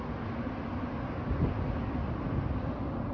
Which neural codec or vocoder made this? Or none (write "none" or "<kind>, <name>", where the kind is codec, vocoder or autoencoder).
none